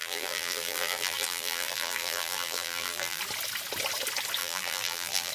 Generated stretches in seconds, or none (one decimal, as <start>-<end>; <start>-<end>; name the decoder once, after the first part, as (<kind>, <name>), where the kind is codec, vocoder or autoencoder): 0.0-3.2 (vocoder, BigVGAN v2); 4.4-5.3